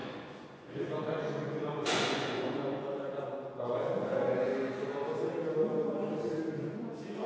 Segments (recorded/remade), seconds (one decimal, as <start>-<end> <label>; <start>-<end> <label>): 0.0-4.5 remade; 4.5-5.5 recorded; 5.5-6.0 remade; 6.0-6.6 recorded; 6.6-7.3 remade